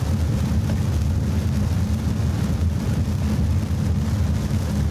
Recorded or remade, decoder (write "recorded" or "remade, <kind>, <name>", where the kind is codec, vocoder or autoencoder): recorded